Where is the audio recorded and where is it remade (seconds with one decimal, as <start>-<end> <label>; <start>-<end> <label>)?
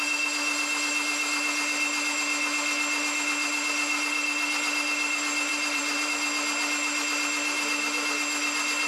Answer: 0.0-5.5 recorded; 5.5-6.1 remade; 6.1-8.9 recorded